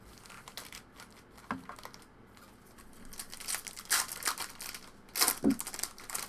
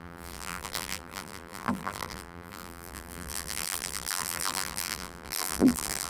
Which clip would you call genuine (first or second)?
first